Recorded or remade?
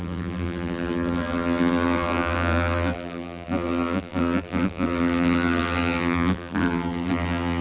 remade